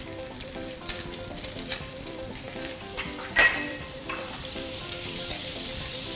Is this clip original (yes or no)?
no